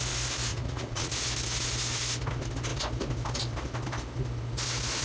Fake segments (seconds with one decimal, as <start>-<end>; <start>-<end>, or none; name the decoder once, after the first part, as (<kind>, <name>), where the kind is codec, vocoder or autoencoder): 0.5-1.1 (vocoder, Vocos)

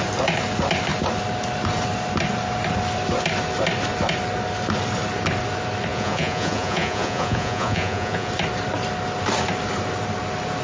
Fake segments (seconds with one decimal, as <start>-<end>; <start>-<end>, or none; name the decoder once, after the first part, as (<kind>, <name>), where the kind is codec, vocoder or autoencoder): 5.9-8.3 (vocoder, Vocos)

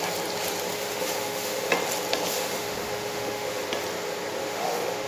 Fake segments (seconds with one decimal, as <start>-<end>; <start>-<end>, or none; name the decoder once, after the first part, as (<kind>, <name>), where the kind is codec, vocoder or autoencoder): 0.7-1.7 (autoencoder, DAC-VAE); 2.3-3.6; 4.4-5.1

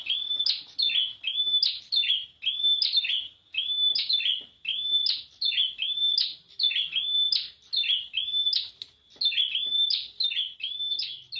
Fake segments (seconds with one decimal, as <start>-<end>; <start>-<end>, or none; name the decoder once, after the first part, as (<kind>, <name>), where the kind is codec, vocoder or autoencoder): none

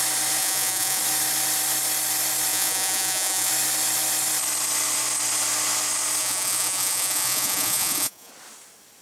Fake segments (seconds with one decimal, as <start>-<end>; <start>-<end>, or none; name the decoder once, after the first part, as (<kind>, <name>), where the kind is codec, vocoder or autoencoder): 0.4-1.0 (vocoder, Vocos); 2.5-3.5; 6.2-8.3

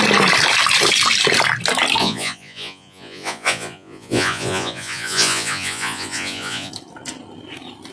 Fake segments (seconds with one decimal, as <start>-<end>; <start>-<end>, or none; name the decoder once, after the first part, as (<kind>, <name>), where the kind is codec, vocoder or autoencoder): 2.0-6.7 (vocoder, Vocos)

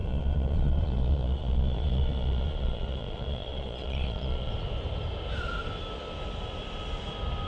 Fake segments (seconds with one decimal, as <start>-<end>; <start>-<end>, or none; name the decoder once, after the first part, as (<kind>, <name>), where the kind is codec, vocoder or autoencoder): 0.0-4.5 (vocoder, Vocos)